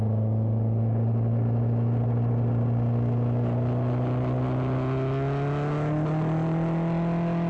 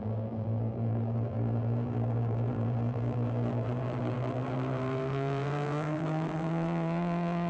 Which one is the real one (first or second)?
first